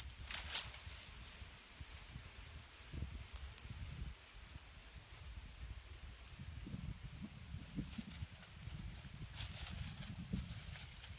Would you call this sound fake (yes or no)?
no